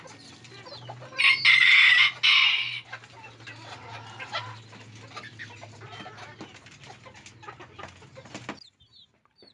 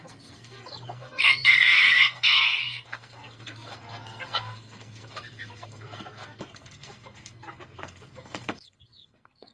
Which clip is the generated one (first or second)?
second